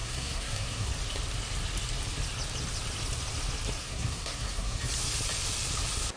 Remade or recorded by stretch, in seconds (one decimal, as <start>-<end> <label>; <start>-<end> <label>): 0.0-0.9 remade; 0.9-3.8 recorded; 3.8-4.8 remade; 4.8-6.2 recorded